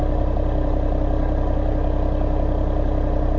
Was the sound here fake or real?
real